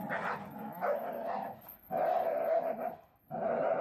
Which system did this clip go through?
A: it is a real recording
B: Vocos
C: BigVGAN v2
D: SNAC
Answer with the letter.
A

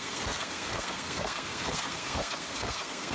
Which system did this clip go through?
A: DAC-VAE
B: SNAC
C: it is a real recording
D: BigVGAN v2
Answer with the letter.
B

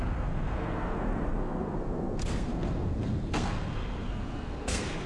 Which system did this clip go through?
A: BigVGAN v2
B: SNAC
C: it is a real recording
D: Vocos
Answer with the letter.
B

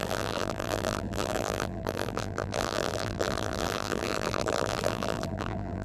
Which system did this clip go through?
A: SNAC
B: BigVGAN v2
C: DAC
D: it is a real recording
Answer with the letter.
B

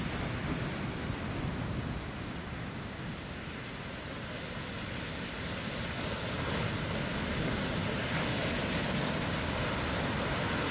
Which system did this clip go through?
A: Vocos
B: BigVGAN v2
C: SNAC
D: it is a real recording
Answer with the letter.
D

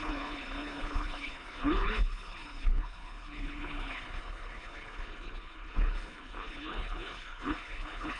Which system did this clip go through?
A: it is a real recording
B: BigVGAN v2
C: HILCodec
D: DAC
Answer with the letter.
C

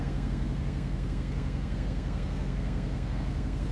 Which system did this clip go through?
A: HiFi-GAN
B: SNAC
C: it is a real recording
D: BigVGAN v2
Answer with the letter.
B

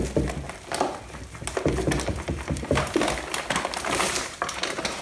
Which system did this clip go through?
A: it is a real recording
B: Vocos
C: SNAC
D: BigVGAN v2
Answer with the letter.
A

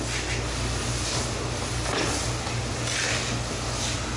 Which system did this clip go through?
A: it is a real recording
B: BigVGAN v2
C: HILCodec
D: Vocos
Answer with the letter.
A